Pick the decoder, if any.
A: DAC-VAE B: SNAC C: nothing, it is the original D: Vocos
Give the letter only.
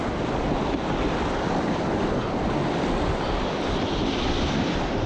C